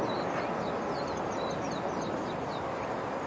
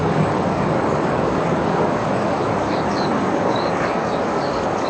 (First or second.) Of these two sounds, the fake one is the second